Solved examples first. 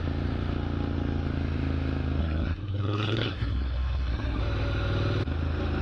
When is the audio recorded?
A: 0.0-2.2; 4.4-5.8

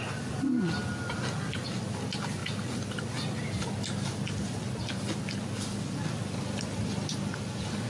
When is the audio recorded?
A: 0.0-7.9

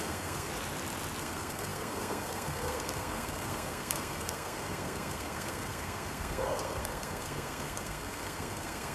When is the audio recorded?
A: 0.5-1.2

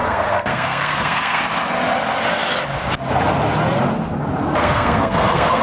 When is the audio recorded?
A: 1.4-4.6